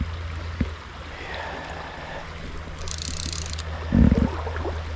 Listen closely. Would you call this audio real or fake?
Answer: real